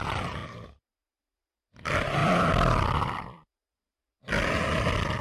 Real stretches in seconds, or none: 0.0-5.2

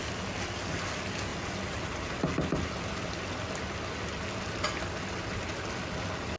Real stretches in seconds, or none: 0.0-6.4